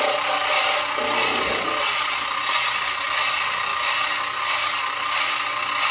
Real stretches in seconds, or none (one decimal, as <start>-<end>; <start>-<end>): 0.0-5.9